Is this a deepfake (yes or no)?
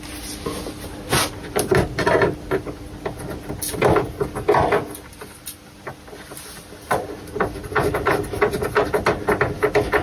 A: no